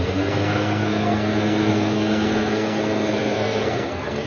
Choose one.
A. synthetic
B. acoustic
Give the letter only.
A